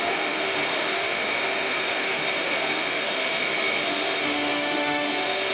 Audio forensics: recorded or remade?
remade